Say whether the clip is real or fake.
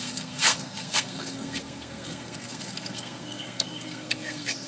fake